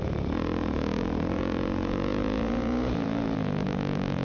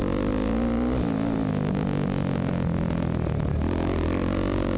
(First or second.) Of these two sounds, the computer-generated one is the first